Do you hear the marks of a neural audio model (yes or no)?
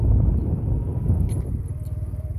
no